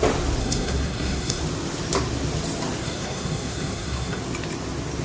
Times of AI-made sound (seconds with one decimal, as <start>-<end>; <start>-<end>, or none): 0.4-1.4; 2.8-4.2